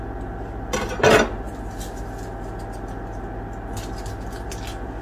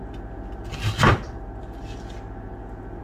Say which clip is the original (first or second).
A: first